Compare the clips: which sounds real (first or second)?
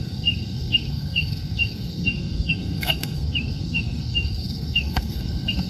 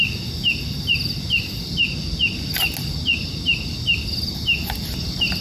second